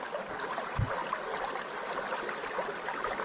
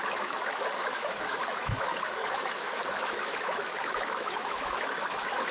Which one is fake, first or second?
second